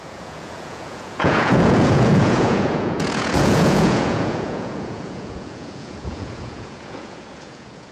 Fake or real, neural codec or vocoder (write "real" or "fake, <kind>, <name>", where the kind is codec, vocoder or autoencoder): fake, vocoder, Vocos